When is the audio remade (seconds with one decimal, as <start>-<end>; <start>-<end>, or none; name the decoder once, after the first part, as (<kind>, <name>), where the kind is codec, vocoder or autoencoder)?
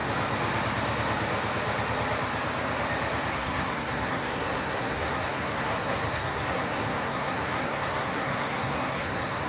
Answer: 3.3-9.5 (codec, SNAC)